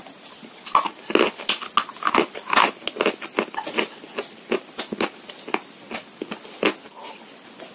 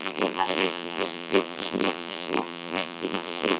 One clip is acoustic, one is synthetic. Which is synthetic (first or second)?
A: second